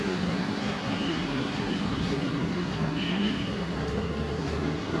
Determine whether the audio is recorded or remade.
remade